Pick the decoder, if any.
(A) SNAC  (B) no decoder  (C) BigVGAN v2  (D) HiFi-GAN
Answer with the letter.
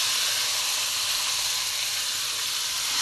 B